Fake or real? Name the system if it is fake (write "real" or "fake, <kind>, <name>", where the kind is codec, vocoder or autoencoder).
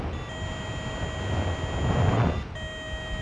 real